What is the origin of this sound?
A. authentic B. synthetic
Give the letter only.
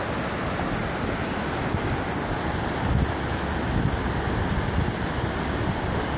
A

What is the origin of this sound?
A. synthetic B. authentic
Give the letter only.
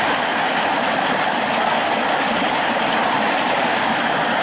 B